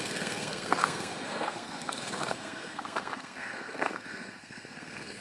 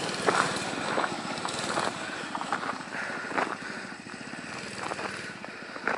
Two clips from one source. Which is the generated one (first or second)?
first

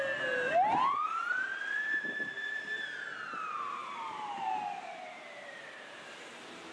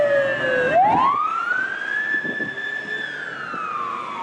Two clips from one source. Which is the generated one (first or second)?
first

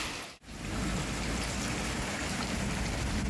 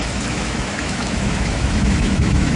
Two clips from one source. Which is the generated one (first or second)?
second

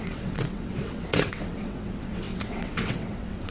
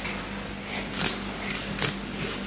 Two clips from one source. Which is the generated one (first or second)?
first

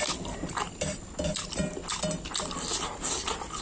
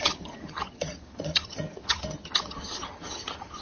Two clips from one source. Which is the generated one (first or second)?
second